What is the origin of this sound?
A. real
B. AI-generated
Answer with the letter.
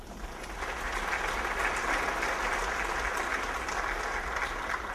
A